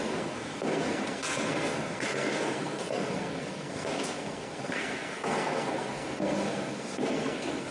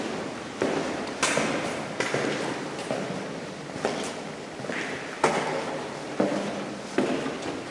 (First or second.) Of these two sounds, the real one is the second